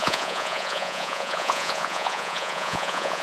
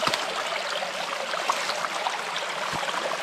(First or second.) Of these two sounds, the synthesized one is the first